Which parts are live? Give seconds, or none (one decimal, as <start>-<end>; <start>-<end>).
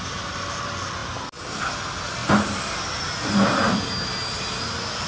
0.0-5.1